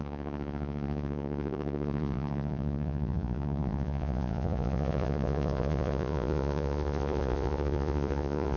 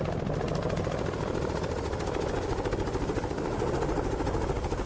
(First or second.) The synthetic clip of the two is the first